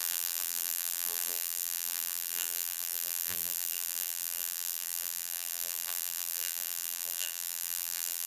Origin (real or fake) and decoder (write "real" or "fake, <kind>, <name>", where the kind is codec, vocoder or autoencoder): fake, vocoder, BigVGAN v2